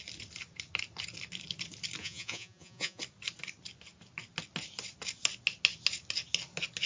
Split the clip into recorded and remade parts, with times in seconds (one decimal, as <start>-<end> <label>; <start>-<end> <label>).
0.0-2.0 recorded; 2.0-3.0 remade; 3.0-6.9 recorded